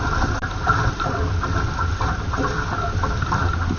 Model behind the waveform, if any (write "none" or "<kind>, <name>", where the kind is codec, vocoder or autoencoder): none